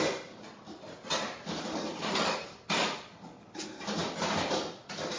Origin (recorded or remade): recorded